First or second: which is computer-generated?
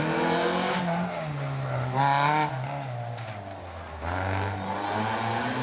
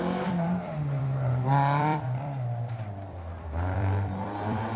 second